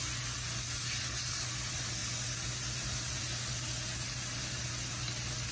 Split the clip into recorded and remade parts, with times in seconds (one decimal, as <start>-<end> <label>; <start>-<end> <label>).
0.0-5.5 recorded